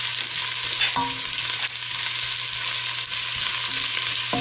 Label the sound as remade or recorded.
recorded